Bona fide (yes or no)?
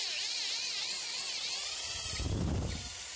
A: yes